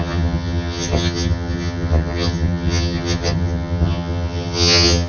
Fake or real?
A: fake